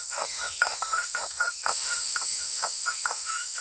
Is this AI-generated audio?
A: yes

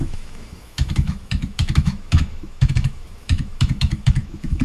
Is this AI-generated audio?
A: yes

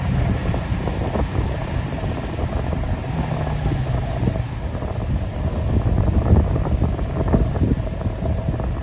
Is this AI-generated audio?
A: no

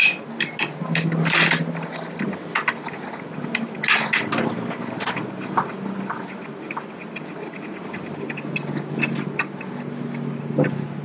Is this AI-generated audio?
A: no